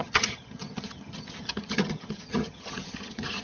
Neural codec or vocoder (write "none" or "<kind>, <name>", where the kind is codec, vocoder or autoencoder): vocoder, HiFi-GAN